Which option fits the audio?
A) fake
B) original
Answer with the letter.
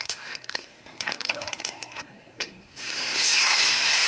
A